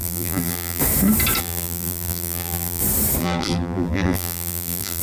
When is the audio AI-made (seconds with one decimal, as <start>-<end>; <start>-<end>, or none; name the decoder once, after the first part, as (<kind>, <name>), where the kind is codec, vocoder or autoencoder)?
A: 0.0-0.8 (vocoder, BigVGAN v2); 1.4-2.8; 3.2-5.0